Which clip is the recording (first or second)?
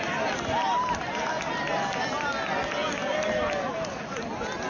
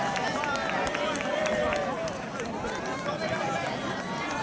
first